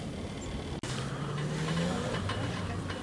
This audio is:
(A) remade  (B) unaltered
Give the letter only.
B